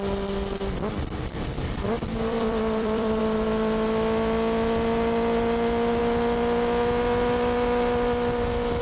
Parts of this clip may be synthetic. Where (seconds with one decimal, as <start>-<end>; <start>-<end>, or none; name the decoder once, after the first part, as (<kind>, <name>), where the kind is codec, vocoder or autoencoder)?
1.6-3.2 (vocoder, BigVGAN v2)